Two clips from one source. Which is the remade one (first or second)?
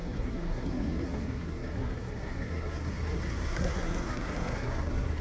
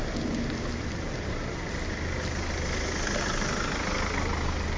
first